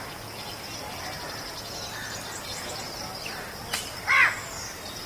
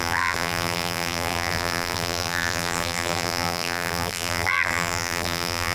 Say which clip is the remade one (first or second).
second